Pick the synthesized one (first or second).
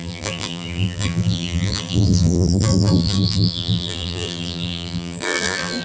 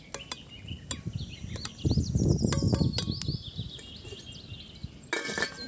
first